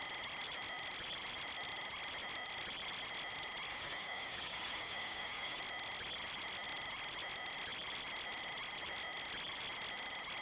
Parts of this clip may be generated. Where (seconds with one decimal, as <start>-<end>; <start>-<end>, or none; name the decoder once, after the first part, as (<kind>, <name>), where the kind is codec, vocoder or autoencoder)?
3.7-5.6 (codec, DAC)